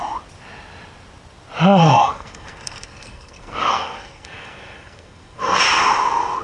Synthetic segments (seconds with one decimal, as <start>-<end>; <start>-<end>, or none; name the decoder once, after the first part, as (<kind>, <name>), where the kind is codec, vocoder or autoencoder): 1.8-5.6 (codec, SNAC)

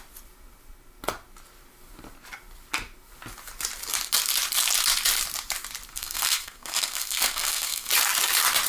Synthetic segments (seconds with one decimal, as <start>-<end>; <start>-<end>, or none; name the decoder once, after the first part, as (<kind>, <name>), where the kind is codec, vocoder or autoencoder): 5.9-7.9 (codec, SNAC)

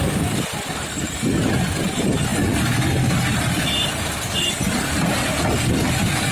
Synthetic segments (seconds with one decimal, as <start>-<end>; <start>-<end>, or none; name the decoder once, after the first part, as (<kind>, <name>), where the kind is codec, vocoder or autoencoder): none

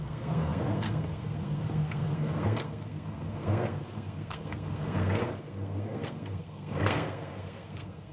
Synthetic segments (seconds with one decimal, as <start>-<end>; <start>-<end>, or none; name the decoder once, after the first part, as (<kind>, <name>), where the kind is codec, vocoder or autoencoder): 0.0-8.1 (codec, SNAC)

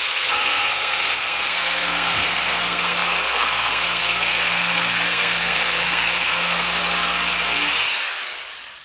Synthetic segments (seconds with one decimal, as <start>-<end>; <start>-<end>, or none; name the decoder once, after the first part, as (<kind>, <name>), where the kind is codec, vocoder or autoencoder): 0.0-6.8 (codec, SNAC)

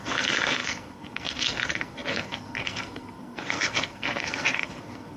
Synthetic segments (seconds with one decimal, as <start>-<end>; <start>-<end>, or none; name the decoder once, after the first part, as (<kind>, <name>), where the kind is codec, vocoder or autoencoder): 0.0-5.2 (codec, SNAC)